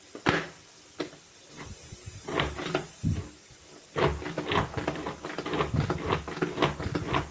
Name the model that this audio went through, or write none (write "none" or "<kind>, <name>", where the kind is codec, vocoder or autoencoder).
none